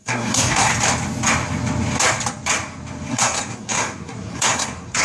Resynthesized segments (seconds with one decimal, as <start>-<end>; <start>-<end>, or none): 0.0-0.7; 3.1-5.0